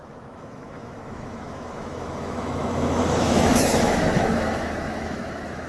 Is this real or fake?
fake